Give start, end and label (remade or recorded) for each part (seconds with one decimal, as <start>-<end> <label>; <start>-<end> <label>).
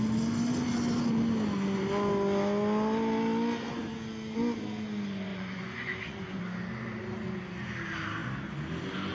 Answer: 0.0-5.3 recorded; 5.3-6.4 remade; 6.4-9.1 recorded